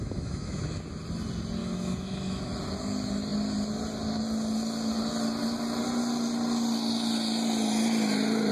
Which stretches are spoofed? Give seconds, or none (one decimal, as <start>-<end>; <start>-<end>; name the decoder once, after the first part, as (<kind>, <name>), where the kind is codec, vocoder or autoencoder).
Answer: 0.0-0.8 (autoencoder, DAC-VAE); 1.6-2.5